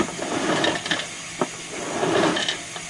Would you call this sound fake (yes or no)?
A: no